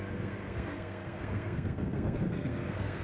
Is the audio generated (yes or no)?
yes